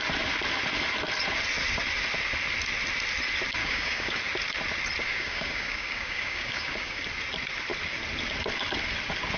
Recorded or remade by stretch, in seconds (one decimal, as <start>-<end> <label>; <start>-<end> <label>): 0.0-3.6 recorded; 3.6-4.2 remade; 4.2-5.0 recorded; 5.0-7.0 remade; 7.0-9.4 recorded